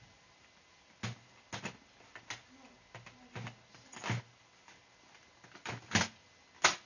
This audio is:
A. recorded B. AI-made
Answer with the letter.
A